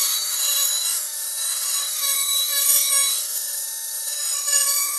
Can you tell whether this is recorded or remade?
remade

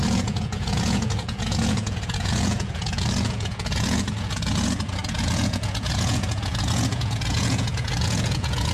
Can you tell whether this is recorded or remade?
remade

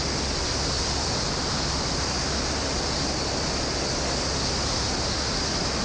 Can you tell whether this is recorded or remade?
recorded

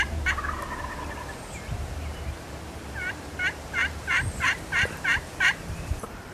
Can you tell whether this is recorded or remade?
remade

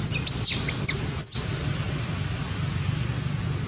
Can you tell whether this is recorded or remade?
recorded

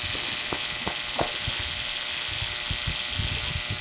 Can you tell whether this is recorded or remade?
recorded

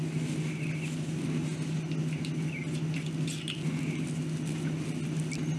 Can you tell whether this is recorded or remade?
recorded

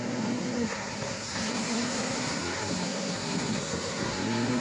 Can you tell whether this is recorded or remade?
remade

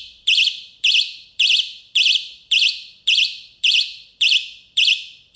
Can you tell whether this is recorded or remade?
remade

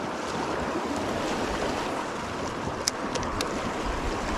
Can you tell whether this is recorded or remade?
recorded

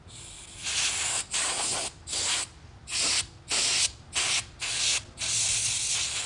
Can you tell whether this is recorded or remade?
recorded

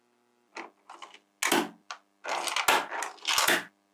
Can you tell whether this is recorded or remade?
recorded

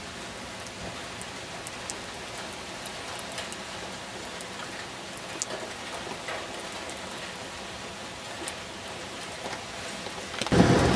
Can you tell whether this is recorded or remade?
recorded